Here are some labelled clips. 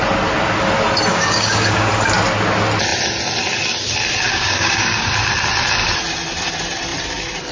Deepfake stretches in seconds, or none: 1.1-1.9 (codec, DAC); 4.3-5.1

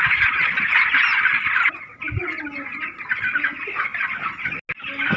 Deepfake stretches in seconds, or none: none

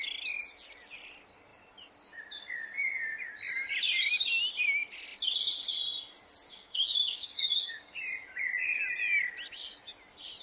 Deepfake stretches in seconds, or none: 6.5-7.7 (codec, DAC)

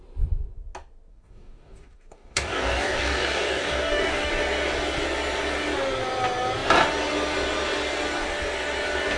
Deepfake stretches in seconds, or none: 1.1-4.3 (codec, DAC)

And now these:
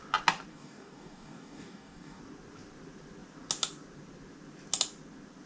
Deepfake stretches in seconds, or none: 0.5-2.2 (codec, DAC)

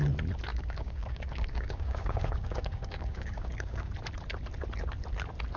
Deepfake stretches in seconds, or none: 0.5-3.9 (codec, DAC)

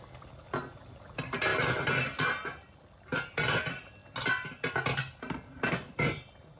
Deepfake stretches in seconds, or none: none

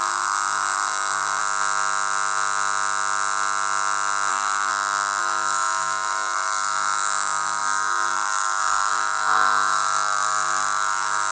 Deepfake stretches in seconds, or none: 0.0-1.4 (codec, DAC); 4.3-4.7; 5.2-11.3